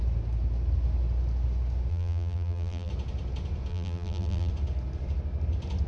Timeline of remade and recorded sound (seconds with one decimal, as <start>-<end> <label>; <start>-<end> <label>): 0.0-1.9 recorded; 1.9-2.9 remade; 2.9-3.7 recorded; 3.7-4.5 remade; 4.5-5.9 recorded